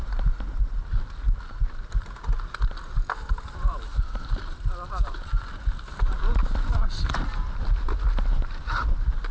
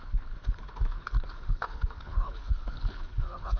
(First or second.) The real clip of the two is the first